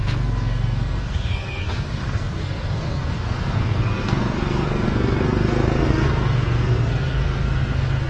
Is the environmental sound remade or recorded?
remade